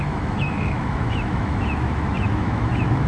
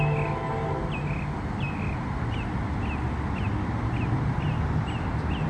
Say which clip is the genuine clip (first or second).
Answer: second